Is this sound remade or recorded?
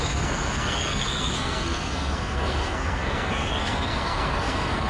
remade